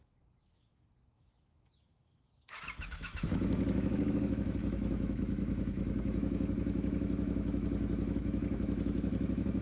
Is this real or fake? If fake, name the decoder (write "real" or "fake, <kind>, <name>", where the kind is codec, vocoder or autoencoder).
fake, autoencoder, DAC-VAE